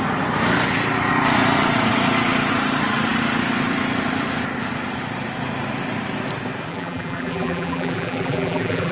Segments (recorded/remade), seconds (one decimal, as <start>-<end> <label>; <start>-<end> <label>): 0.0-6.7 recorded; 6.7-8.9 remade